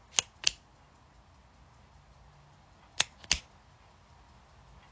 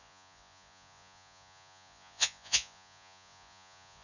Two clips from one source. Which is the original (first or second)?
first